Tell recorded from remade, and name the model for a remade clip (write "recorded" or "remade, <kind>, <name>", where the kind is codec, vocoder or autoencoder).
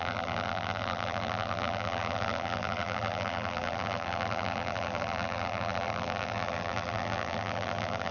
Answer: remade, vocoder, BigVGAN v2